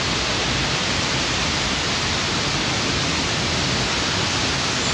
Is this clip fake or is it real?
real